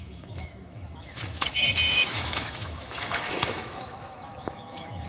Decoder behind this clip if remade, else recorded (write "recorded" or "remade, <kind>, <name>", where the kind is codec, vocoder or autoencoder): remade, autoencoder, DAC-VAE